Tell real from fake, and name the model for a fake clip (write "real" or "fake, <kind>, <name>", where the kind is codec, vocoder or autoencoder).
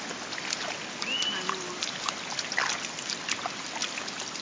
real